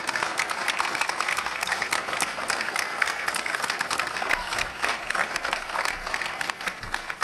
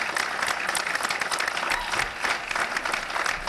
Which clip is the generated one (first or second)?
first